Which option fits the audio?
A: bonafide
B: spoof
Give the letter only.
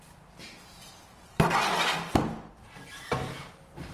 A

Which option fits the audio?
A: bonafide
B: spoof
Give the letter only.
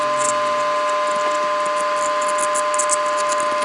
A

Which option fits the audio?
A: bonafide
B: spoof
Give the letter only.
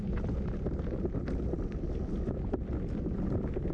A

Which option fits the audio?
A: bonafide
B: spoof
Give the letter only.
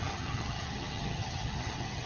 B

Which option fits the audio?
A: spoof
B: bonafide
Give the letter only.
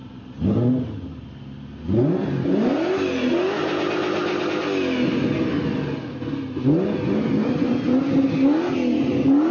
B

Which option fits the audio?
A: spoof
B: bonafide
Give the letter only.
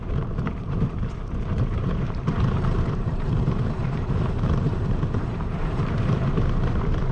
A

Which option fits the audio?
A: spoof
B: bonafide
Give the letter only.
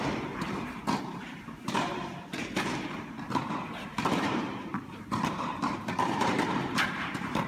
A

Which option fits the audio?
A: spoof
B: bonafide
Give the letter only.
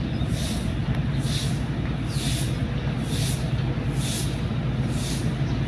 B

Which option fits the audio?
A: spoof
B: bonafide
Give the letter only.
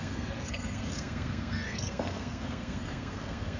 A